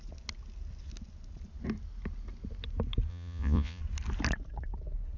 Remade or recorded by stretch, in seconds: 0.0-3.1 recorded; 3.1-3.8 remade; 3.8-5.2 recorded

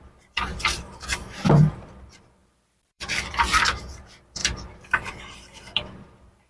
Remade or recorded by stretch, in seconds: 0.0-0.5 recorded; 0.5-1.7 remade; 1.7-2.4 recorded; 2.4-3.8 remade; 3.8-4.4 recorded; 4.4-6.5 remade

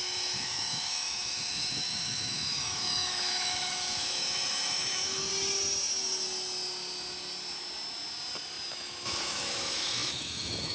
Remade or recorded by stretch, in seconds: 0.0-5.3 remade; 5.3-8.7 recorded; 8.7-10.7 remade

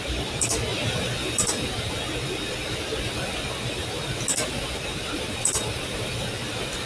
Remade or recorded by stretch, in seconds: 0.0-0.7 remade; 0.7-4.8 recorded; 4.8-5.6 remade; 5.6-6.9 recorded

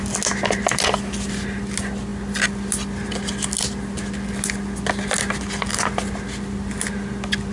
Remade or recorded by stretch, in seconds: 0.0-7.5 recorded

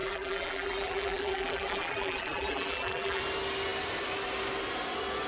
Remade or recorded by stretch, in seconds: 0.0-3.2 remade; 3.2-5.3 recorded

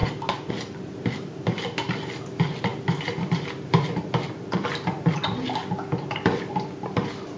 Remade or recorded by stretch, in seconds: 0.0-7.4 recorded

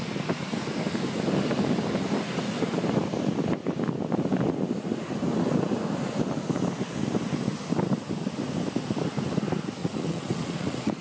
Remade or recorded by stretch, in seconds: 0.0-9.8 recorded; 9.8-11.0 remade